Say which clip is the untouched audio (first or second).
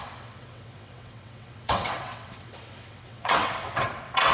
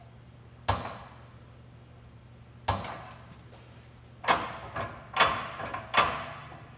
second